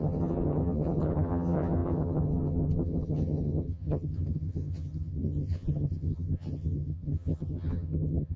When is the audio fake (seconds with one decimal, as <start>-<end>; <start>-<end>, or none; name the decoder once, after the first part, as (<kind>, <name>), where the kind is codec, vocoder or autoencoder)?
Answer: 0.0-8.4 (vocoder, HiFi-GAN)